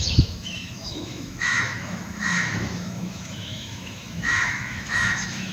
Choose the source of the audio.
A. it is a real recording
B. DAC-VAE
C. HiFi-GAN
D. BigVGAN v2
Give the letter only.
B